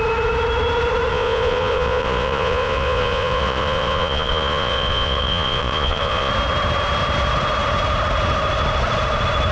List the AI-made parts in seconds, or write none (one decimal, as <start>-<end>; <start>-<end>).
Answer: 1.1-6.3